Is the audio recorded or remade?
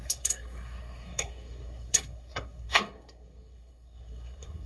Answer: remade